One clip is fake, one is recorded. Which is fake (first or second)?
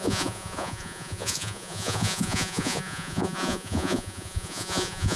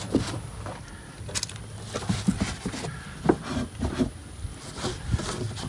first